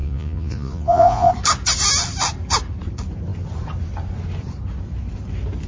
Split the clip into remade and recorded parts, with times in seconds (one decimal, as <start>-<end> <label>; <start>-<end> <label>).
0.0-1.3 remade; 1.3-5.7 recorded